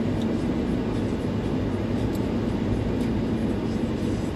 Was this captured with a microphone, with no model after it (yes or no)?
yes